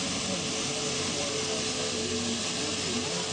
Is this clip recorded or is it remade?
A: recorded